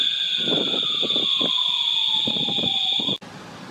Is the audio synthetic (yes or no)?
no